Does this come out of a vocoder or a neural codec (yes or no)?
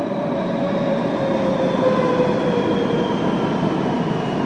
no